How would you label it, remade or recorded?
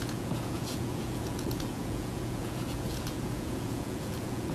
remade